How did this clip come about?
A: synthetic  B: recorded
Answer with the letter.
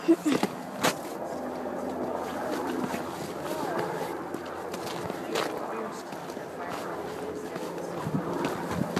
B